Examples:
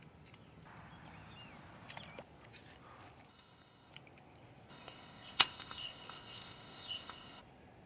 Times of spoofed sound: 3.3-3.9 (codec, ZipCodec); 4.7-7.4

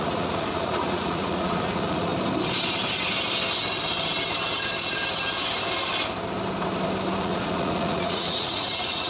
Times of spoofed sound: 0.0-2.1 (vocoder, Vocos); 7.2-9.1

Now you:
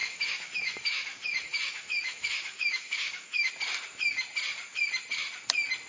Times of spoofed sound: 0.0-3.5 (autoencoder, DAC-VAE)

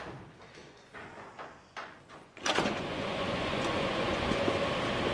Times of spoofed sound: 0.6-1.3 (vocoder, Vocos); 1.8-4.6

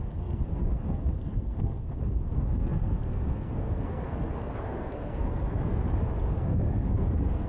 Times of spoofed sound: 0.0-5.8 (codec, SNAC); 6.3-7.5

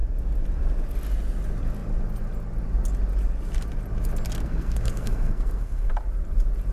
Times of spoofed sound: 4.4-5.9 (codec, SNAC)